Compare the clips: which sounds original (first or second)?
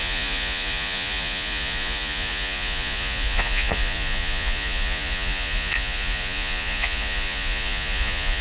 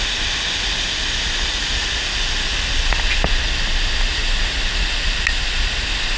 second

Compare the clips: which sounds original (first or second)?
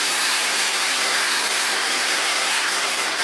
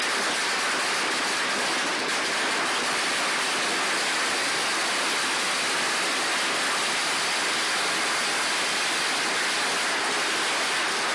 second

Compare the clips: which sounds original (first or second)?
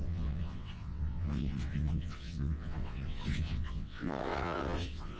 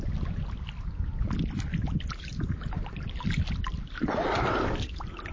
second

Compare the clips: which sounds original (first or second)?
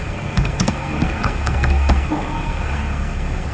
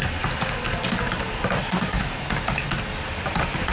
second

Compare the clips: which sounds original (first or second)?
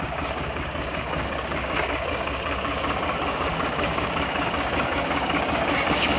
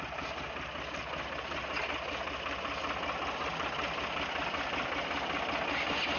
second